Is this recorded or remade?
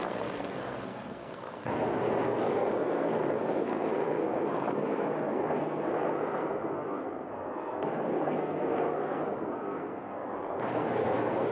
remade